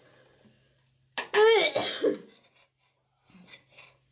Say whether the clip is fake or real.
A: real